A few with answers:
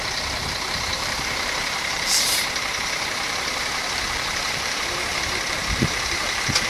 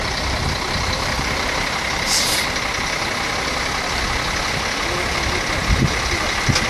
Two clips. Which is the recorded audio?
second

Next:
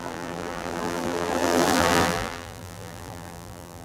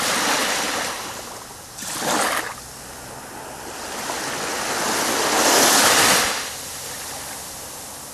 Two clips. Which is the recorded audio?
second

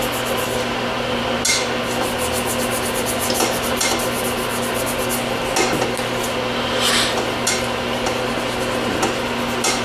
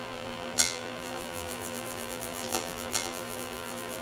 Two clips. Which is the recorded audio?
first